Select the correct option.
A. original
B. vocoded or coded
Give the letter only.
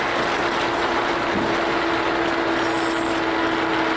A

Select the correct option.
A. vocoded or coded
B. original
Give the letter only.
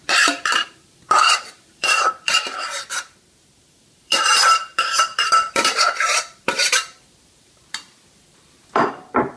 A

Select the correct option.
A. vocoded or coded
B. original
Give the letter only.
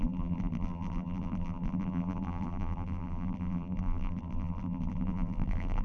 A